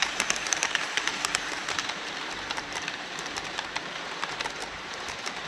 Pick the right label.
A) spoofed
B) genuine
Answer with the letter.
A